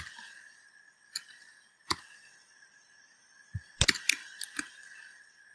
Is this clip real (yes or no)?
yes